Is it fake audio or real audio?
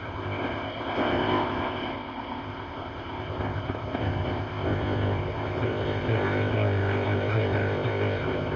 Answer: fake